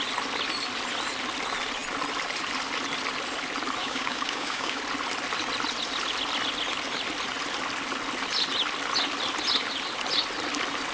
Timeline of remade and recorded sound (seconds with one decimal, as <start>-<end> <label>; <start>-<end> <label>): 0.0-3.8 recorded; 3.8-4.8 remade; 4.8-10.9 recorded